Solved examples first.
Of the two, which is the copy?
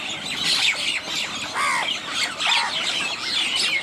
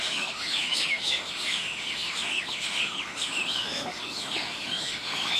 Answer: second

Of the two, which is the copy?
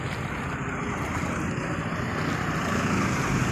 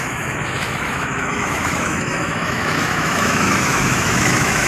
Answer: second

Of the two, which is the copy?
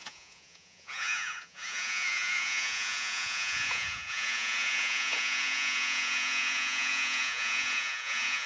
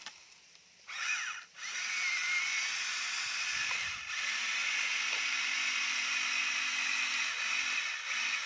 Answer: first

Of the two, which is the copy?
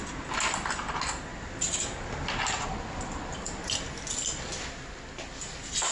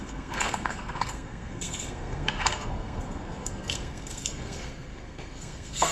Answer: second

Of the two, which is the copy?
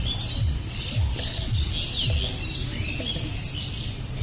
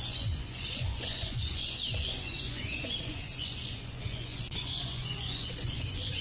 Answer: second